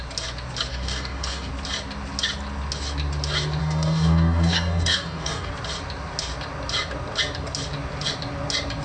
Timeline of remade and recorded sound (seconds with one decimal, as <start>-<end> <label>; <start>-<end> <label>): 0.0-0.7 recorded; 0.7-1.5 remade; 1.5-3.6 recorded; 3.6-5.5 remade; 5.5-8.8 recorded